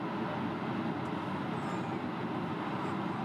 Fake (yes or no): no